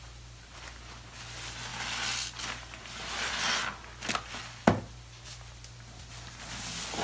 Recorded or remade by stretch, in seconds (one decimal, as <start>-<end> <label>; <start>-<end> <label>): 0.0-7.0 recorded

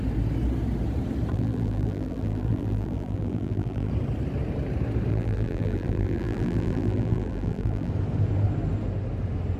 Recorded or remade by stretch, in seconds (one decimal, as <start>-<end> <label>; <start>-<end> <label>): 0.0-1.3 recorded; 1.3-3.9 remade; 3.9-5.1 recorded; 5.1-7.9 remade; 7.9-9.6 recorded

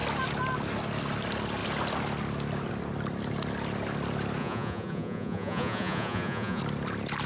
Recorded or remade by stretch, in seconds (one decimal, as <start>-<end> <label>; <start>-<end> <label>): 0.0-4.4 recorded; 4.4-6.6 remade; 6.6-7.3 recorded

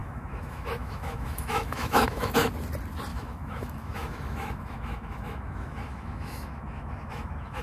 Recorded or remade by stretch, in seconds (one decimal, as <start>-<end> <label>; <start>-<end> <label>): 0.0-2.5 remade; 2.5-3.1 recorded; 3.1-7.6 remade

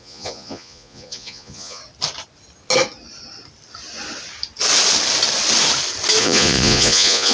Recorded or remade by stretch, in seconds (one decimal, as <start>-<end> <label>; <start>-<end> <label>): 0.0-1.8 remade; 1.8-6.2 recorded; 6.2-7.3 remade

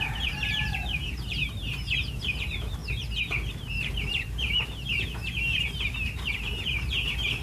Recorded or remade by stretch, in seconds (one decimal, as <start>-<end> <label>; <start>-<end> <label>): 0.0-2.8 remade; 2.8-3.5 recorded; 3.5-7.4 remade